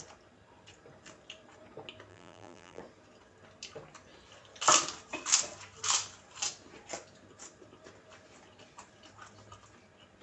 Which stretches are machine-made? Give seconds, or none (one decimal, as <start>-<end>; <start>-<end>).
2.1-2.8